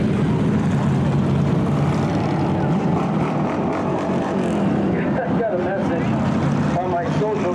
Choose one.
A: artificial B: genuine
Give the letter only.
B